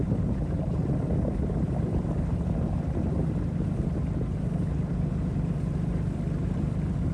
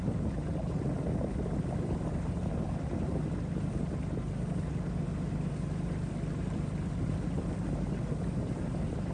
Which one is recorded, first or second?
second